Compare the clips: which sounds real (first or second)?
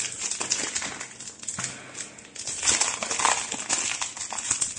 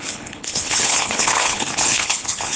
first